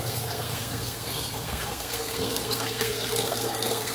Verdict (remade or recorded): remade